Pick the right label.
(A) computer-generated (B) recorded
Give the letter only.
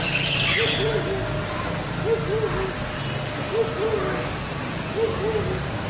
B